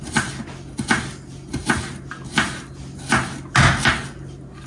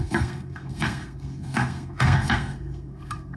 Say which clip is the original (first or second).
first